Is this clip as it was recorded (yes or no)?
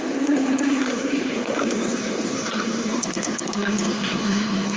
no